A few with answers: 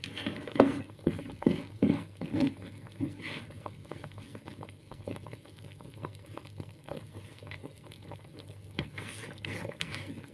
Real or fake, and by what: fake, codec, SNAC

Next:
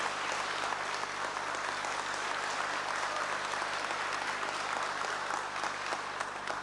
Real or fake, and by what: real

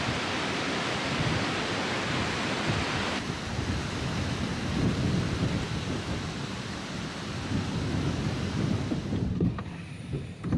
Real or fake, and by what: fake, vocoder, BigVGAN v2